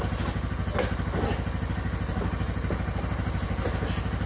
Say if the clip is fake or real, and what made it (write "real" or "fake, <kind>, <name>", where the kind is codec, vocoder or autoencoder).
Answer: real